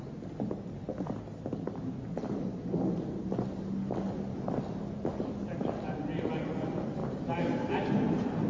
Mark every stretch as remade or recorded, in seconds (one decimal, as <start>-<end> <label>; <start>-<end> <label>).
0.0-8.5 recorded